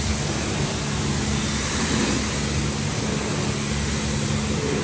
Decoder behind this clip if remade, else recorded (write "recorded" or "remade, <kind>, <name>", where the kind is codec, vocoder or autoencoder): recorded